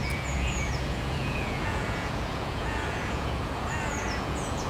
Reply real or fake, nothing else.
fake